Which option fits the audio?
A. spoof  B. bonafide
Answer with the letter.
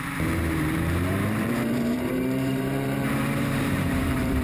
A